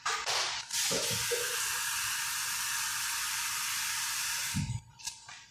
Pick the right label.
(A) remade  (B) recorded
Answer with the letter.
B